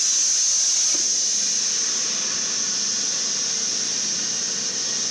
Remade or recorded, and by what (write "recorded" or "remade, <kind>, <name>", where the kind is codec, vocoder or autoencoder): recorded